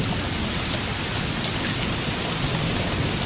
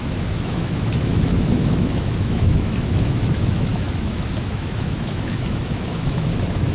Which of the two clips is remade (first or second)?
second